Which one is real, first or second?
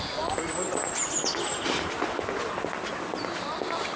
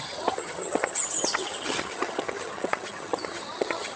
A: first